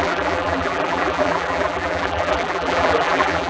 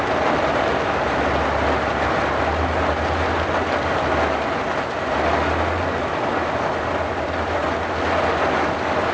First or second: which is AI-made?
first